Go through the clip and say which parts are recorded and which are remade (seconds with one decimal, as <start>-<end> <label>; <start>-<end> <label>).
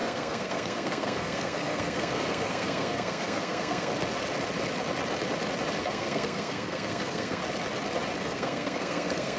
0.0-3.9 remade; 3.9-5.8 recorded; 5.8-7.4 remade; 7.4-8.2 recorded; 8.2-9.4 remade